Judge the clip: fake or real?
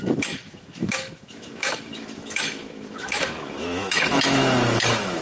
fake